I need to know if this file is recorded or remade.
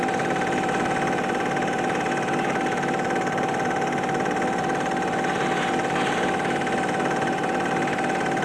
recorded